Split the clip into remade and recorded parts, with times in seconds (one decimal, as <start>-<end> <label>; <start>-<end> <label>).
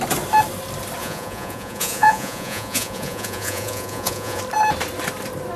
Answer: 0.0-1.0 recorded; 1.0-4.4 remade; 4.4-5.6 recorded